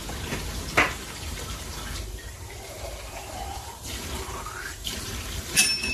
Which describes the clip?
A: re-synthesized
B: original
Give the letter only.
A